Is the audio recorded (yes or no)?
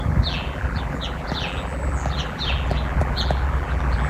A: no